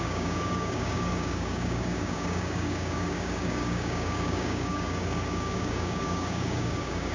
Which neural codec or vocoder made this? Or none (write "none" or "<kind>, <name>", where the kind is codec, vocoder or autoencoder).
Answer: codec, DAC